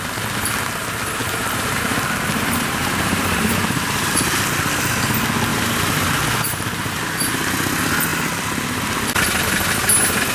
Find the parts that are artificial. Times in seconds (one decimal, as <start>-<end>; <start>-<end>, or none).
1.2-4.2; 5.5-7.0